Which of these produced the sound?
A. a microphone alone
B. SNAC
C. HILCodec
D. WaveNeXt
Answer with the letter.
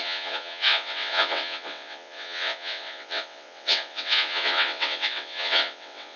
D